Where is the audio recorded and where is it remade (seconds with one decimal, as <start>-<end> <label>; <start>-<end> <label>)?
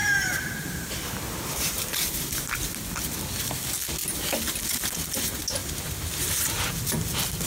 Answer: 0.0-2.7 remade; 2.7-7.5 recorded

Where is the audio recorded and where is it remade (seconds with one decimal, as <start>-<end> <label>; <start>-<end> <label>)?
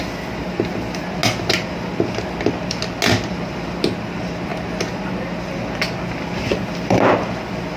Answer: 0.0-7.8 recorded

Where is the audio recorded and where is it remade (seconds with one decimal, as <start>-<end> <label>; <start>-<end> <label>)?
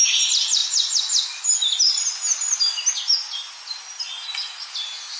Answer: 0.0-5.2 recorded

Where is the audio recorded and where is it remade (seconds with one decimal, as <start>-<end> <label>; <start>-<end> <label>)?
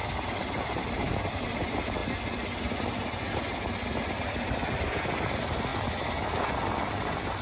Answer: 0.0-7.4 recorded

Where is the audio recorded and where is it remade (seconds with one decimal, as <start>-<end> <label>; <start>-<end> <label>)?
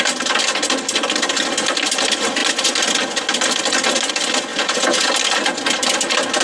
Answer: 0.0-4.5 recorded; 4.5-5.1 remade; 5.1-6.4 recorded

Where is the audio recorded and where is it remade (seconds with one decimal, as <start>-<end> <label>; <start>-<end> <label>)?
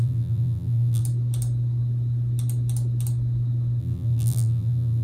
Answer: 0.0-1.0 remade; 1.0-3.8 recorded; 3.8-5.0 remade